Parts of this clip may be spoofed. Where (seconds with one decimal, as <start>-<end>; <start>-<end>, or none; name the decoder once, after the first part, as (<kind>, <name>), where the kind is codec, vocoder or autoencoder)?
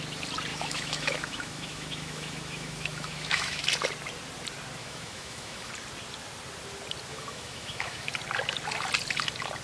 0.5-3.6 (autoencoder, DAC-VAE); 4.8-5.7; 7.1-8.1